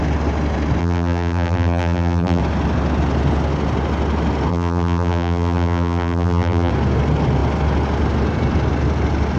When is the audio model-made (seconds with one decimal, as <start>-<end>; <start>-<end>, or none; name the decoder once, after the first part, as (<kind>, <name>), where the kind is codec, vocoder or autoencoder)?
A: 0.8-2.4 (vocoder, BigVGAN v2); 4.5-6.7

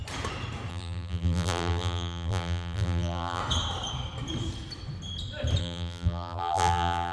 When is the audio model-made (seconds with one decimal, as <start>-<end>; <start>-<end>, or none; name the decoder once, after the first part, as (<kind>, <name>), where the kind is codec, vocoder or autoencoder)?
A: 0.7-3.4 (vocoder, BigVGAN v2); 5.6-7.1

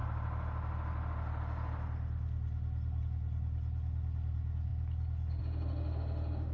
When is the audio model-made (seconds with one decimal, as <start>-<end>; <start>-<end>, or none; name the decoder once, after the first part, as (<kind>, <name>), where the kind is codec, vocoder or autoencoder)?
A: none

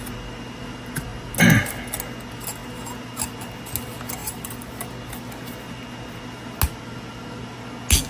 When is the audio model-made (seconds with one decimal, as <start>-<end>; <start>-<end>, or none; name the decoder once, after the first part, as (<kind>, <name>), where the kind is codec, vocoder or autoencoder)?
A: 4.2-4.7 (vocoder, BigVGAN v2)

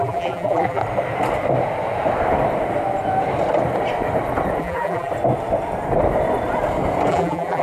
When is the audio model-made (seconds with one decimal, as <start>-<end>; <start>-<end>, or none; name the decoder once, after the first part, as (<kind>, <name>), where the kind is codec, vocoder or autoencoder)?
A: 0.0-0.8 (vocoder, BigVGAN v2); 4.6-5.1; 7.1-7.6